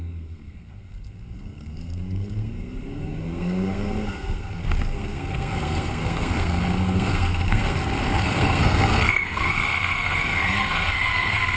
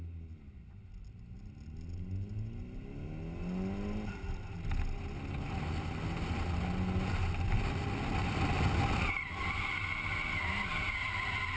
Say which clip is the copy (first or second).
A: first